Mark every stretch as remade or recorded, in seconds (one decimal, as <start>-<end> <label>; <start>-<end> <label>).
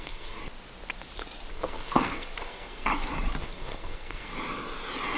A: 0.0-0.4 remade; 0.4-1.5 recorded; 1.5-2.9 remade; 2.9-3.4 recorded; 3.4-4.3 remade; 4.3-5.2 recorded